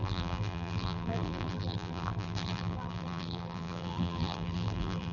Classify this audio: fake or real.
fake